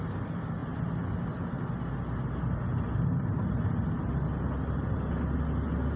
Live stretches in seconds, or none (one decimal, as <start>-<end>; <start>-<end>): 0.0-6.0